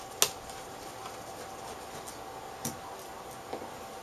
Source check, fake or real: real